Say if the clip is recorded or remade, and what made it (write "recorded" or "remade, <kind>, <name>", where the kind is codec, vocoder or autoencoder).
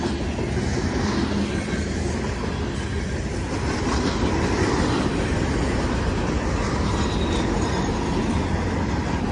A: recorded